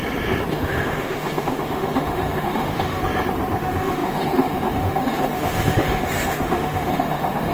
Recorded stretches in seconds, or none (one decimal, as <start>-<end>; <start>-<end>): 0.0-0.5; 3.0-3.6